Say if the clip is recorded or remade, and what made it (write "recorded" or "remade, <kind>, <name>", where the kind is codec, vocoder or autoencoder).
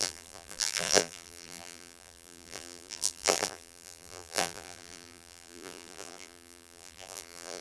remade, vocoder, BigVGAN v2